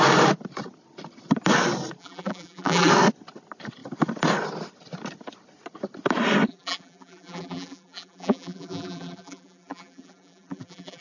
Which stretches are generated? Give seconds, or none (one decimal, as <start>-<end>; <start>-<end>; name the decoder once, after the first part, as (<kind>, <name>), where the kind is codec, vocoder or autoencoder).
2.0-2.9 (vocoder, BigVGAN v2); 6.5-11.0